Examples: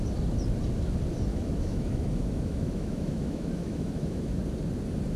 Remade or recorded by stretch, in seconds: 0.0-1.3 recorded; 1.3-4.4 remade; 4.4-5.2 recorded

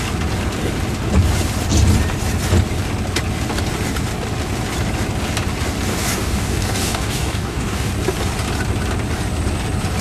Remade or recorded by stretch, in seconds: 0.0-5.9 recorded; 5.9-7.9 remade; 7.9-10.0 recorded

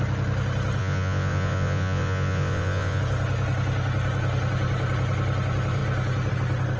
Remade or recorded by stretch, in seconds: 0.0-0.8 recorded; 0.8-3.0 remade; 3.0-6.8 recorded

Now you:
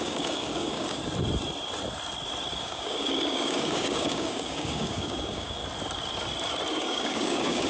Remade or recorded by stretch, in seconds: 0.0-1.0 remade; 1.0-2.6 recorded; 2.6-5.6 remade; 5.6-6.7 recorded; 6.7-7.7 remade